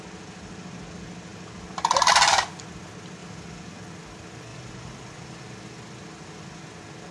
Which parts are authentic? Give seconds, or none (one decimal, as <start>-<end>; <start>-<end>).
0.0-3.2; 3.7-4.5; 6.6-7.1